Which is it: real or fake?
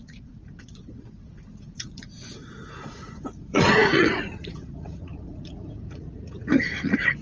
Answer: fake